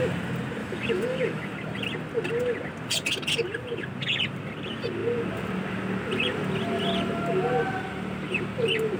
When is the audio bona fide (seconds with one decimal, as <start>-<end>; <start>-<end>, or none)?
0.0-0.6; 1.5-9.0